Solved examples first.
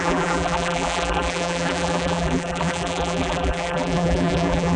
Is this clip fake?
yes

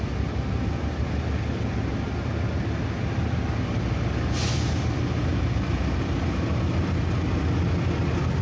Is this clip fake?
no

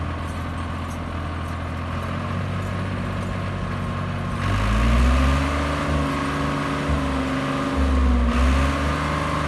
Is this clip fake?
no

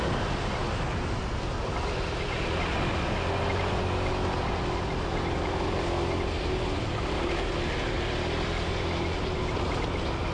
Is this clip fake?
no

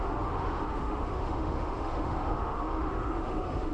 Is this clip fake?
yes